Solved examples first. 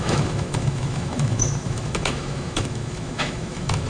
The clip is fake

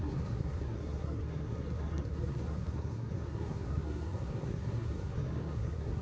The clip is fake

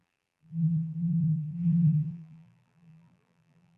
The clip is fake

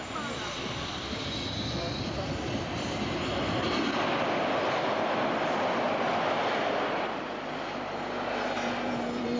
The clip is real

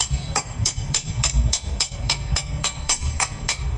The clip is fake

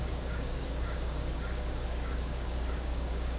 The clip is fake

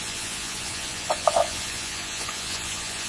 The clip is fake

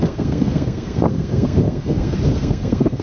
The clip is fake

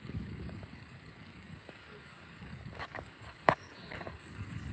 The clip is fake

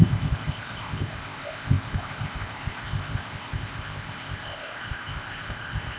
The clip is fake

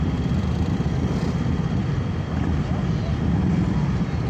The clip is fake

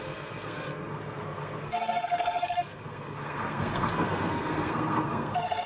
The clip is fake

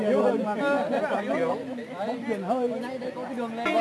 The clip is real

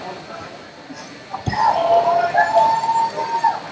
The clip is real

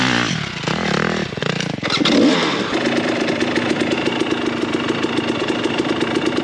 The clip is real